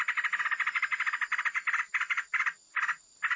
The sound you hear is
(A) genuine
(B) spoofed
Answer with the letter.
A